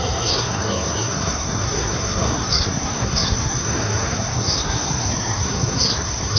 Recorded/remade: remade